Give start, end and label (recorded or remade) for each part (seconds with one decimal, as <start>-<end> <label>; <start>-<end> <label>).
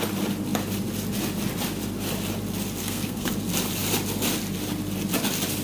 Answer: 0.0-2.8 recorded; 2.8-3.3 remade; 3.3-5.6 recorded